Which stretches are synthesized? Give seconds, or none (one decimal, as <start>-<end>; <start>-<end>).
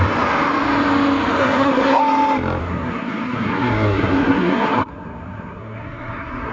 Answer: 1.4-2.0; 2.6-6.5